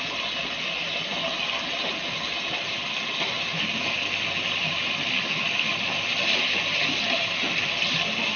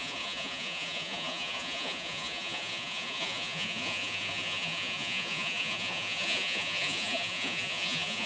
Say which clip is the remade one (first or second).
second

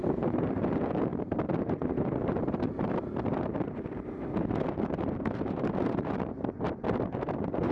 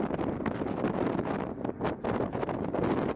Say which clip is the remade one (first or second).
first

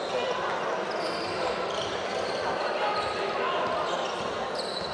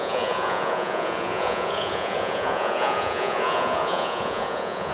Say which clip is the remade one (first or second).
second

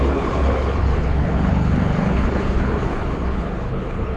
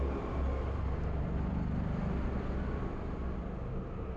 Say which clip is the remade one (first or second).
first